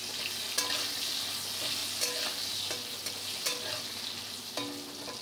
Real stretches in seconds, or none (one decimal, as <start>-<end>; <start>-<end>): 0.0-5.2